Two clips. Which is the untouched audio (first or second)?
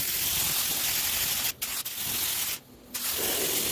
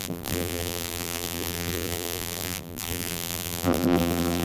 first